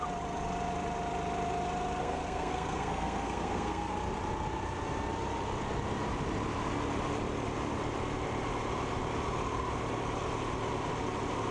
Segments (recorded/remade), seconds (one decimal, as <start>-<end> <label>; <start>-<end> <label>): 0.0-2.0 recorded; 2.0-3.9 remade; 3.9-11.5 recorded